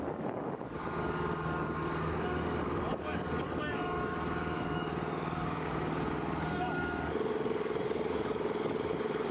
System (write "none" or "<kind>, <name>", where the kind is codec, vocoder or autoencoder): codec, DAC